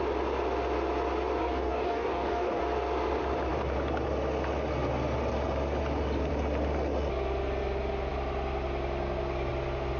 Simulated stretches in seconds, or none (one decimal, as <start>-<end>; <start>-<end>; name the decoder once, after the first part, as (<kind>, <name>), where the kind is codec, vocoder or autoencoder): 1.4-2.6 (codec, DAC)

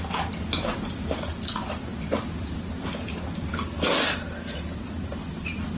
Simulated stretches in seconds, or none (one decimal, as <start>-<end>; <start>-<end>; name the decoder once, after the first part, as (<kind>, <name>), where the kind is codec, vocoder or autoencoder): none

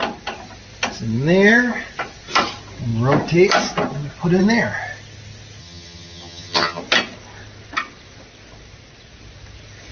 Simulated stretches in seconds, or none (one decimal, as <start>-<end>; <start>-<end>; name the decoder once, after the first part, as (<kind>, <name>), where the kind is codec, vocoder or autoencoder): 5.6-6.8 (vocoder, HiFi-GAN)